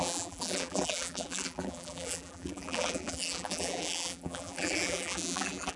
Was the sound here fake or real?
fake